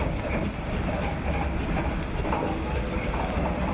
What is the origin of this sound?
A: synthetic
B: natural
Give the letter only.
B